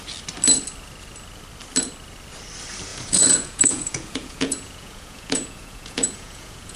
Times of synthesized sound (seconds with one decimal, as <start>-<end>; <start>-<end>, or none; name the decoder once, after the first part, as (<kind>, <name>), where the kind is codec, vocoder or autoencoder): 2.9-6.8 (vocoder, Vocos)

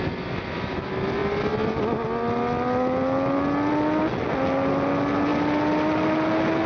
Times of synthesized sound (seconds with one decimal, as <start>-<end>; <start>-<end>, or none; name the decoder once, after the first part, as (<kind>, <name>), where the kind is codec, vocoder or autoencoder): none

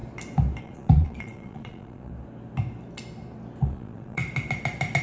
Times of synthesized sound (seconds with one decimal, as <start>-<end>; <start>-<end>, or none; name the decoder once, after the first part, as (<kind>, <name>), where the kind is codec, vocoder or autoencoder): 0.6-2.1 (vocoder, Vocos); 3.6-4.2